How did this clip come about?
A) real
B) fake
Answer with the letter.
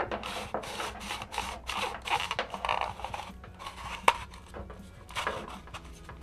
A